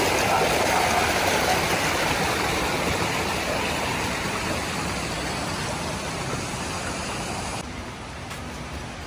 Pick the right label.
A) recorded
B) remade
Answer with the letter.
A